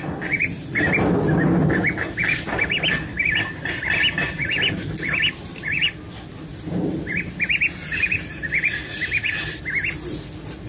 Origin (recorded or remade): recorded